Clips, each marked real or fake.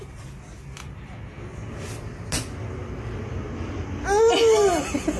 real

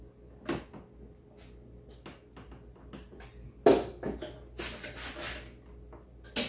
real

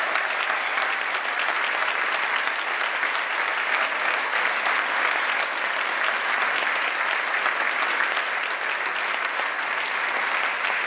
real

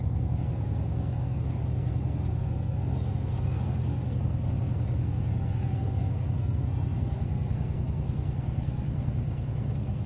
fake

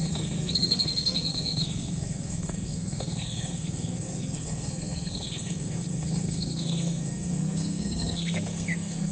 fake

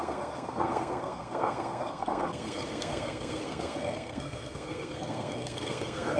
fake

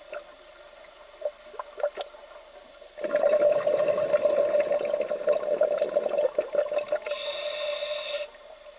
real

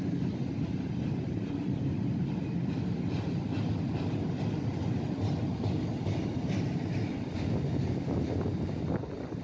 real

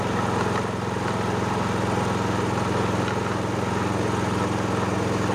real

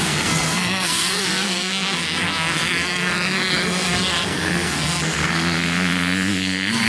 fake